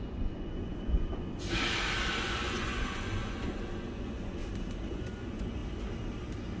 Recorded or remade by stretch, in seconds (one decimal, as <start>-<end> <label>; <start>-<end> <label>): 0.0-1.3 remade; 1.3-2.2 recorded; 2.2-4.4 remade; 4.4-4.9 recorded; 4.9-5.6 remade; 5.6-6.6 recorded